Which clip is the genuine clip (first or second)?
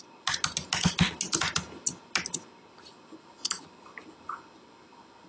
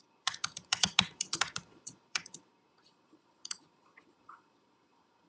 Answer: first